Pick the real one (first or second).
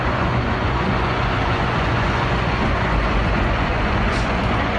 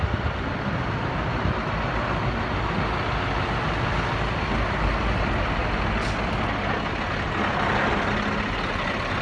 second